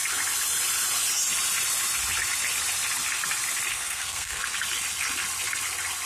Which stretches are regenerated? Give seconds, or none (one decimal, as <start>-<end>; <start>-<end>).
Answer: 3.7-4.4